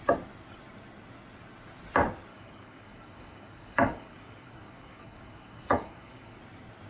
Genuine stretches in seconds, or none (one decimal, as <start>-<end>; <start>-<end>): 0.0-2.3; 6.4-6.9